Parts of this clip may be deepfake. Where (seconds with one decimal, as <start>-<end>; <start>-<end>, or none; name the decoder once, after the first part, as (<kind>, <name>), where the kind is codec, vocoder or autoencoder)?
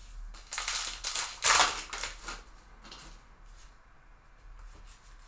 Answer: none